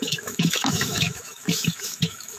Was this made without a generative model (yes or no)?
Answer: no